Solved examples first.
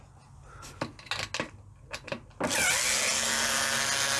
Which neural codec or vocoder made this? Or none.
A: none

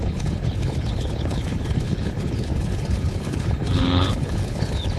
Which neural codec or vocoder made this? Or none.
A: codec, HILCodec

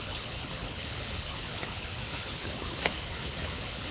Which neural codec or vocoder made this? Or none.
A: codec, HILCodec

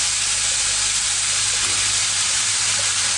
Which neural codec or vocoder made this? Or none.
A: none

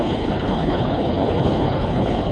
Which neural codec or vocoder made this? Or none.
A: codec, HILCodec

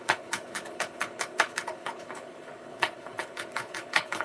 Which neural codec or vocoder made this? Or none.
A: codec, HILCodec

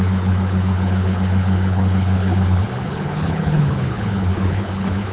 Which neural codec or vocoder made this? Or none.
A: codec, HILCodec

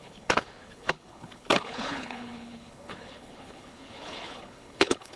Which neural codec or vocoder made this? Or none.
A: codec, HILCodec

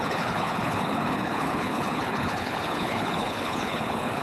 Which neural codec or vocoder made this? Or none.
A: codec, HILCodec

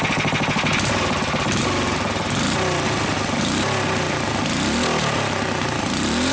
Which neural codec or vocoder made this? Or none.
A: none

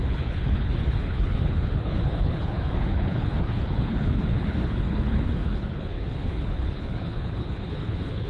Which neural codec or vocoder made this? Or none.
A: codec, HILCodec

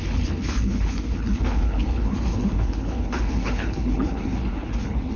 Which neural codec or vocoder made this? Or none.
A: codec, HILCodec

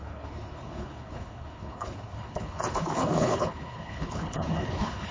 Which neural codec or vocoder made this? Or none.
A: codec, HILCodec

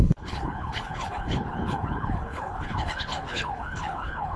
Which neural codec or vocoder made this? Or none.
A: codec, HILCodec